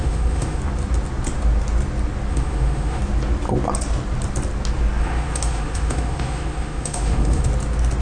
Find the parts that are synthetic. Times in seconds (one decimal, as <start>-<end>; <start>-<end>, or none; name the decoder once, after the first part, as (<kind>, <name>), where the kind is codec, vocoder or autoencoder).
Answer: 0.0-0.6 (autoencoder, DAC-VAE); 2.3-3.0; 5.0-7.5